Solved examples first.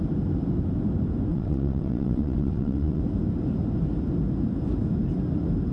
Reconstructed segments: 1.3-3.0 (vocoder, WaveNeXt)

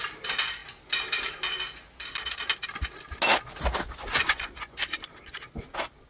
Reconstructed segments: 4.1-4.8 (vocoder, Vocos)

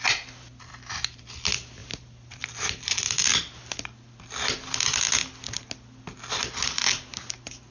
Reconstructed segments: 0.7-1.2 (vocoder, BigVGAN v2); 1.8-3.1; 7.1-7.7

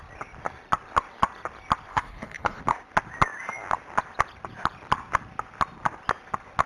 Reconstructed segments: 1.9-2.6 (codec, HILCodec)